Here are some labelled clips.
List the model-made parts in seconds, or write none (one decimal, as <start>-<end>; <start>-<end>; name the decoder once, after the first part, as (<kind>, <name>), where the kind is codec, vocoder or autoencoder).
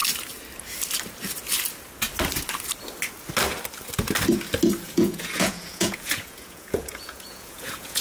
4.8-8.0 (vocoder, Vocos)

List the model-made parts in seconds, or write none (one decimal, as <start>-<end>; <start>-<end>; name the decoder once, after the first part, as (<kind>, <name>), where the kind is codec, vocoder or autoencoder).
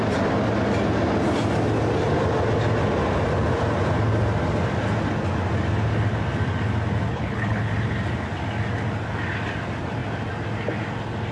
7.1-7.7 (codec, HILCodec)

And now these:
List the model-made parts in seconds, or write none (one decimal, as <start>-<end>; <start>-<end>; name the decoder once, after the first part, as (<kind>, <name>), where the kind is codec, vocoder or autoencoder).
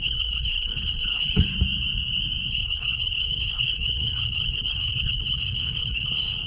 0.0-1.5 (codec, HILCodec); 2.5-6.5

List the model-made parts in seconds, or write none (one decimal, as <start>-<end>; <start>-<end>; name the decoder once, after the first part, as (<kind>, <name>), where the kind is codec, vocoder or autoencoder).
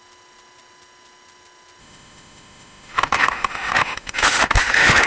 1.8-5.1 (autoencoder, DAC-VAE)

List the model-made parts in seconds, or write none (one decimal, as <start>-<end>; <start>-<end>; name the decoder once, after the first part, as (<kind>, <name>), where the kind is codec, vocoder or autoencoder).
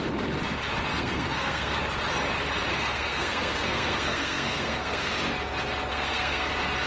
0.9-1.8 (codec, SNAC); 2.7-5.1; 5.9-6.5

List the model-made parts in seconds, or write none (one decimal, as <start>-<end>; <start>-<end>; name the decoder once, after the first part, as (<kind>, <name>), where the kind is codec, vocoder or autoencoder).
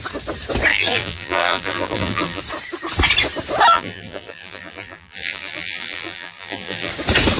0.7-2.4 (vocoder, BigVGAN v2); 3.7-6.9